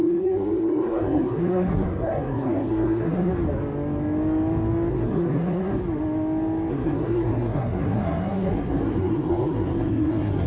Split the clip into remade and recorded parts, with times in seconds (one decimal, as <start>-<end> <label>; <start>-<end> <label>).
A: 0.0-3.3 remade; 3.3-4.9 recorded; 4.9-5.8 remade; 5.8-6.7 recorded; 6.7-10.5 remade

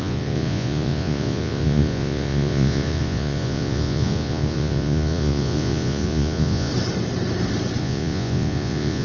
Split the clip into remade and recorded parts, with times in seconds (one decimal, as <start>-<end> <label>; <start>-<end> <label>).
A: 0.0-6.7 remade; 6.7-7.8 recorded; 7.8-9.0 remade